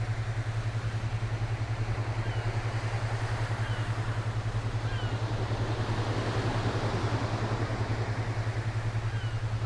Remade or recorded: recorded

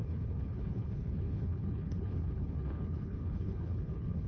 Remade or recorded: remade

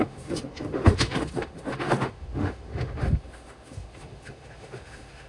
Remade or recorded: remade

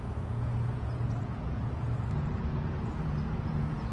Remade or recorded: remade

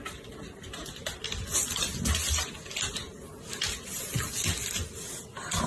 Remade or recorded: recorded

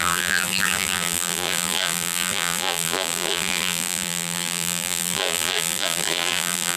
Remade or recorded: remade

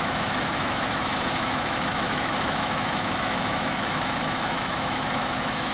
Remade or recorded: remade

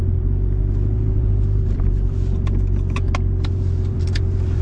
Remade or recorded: remade